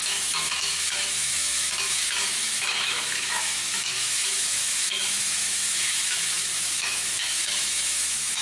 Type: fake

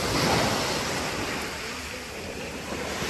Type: real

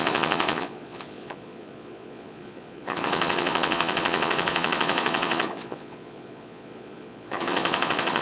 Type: fake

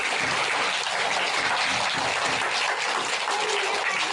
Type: real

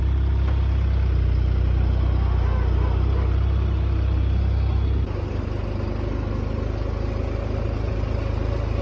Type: real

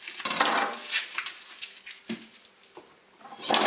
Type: real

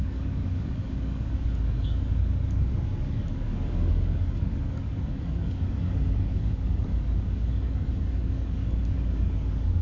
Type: fake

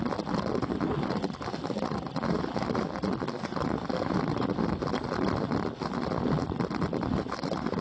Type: real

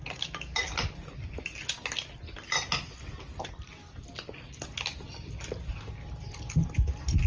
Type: real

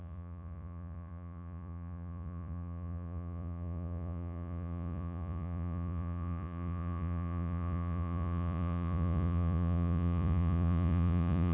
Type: fake